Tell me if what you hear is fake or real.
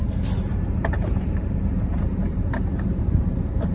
fake